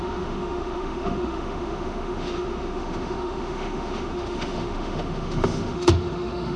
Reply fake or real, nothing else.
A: fake